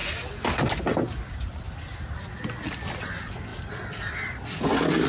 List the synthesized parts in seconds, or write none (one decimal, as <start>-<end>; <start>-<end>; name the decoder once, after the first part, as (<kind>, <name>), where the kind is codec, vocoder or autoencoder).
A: none

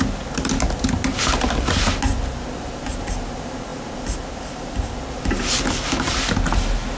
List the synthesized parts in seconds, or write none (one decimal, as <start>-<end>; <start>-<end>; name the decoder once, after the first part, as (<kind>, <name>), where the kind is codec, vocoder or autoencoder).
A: none

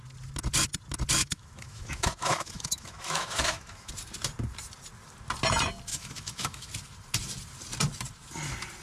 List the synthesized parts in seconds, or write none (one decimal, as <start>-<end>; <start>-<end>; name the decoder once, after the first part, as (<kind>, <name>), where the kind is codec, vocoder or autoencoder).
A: 1.2-3.9 (autoencoder, DAC-VAE); 5.9-6.7

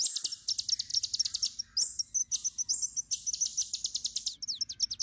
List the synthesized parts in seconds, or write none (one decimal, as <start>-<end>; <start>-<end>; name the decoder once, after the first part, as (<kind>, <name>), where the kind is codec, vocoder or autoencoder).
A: 0.9-1.6 (vocoder, BigVGAN v2)